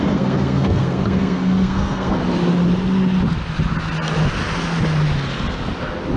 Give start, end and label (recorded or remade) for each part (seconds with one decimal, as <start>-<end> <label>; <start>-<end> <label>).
0.0-2.2 remade; 2.2-6.2 recorded